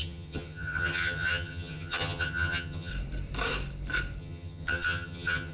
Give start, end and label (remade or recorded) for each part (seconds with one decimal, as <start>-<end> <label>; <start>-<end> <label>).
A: 0.0-2.9 remade; 2.9-4.2 recorded; 4.2-5.5 remade